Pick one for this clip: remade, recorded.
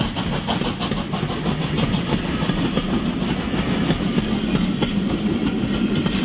recorded